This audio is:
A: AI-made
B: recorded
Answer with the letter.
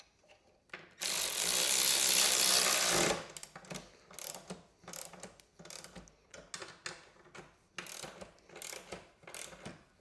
B